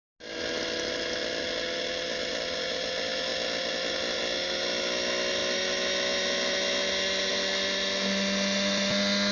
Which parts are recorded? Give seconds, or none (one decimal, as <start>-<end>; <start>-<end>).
0.0-9.3